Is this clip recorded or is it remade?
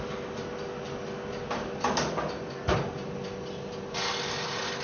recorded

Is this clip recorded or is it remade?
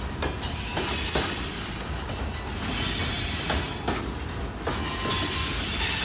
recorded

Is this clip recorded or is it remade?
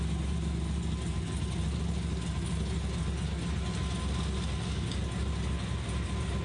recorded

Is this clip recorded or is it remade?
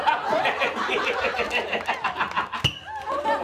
recorded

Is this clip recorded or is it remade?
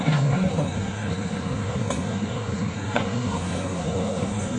remade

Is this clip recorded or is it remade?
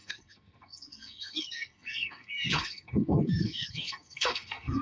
remade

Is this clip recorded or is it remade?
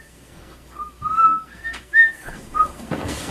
remade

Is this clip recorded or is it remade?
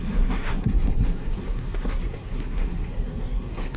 remade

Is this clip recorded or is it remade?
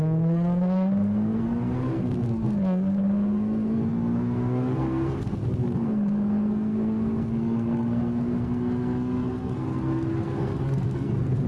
remade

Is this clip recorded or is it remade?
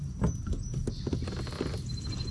recorded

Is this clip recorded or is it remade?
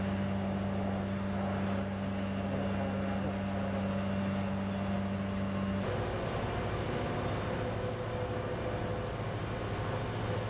recorded